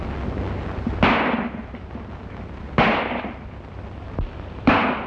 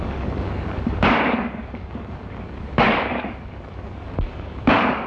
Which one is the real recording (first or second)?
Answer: first